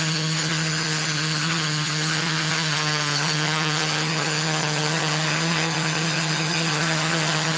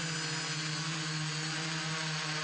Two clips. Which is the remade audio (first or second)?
first